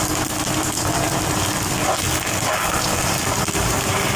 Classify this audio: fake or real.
real